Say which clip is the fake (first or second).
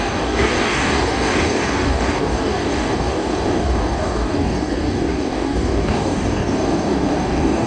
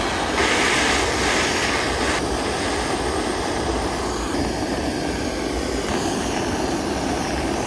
first